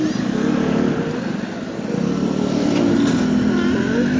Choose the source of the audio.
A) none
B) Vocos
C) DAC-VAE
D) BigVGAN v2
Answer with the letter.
A